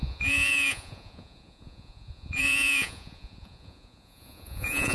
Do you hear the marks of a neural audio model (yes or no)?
yes